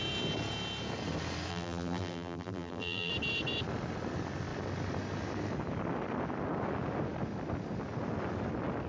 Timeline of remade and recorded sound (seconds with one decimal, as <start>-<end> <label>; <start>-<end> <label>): 0.0-1.5 recorded; 1.5-3.1 remade; 3.1-8.9 recorded